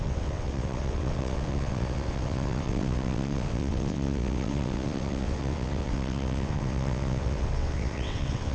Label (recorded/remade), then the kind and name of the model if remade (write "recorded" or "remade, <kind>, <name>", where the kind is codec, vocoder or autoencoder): remade, vocoder, WaveNeXt